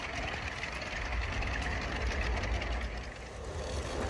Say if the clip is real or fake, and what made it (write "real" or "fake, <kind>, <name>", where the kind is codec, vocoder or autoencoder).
real